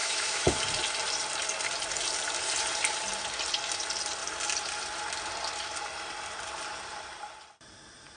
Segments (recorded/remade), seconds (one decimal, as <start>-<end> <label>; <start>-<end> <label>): 0.0-0.6 remade; 0.6-8.2 recorded